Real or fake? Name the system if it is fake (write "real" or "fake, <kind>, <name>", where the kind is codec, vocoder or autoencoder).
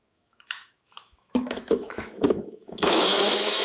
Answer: fake, autoencoder, DAC-VAE